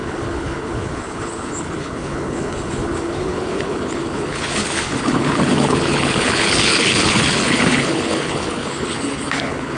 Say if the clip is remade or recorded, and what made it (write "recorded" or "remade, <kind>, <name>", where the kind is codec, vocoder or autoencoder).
remade, codec, HILCodec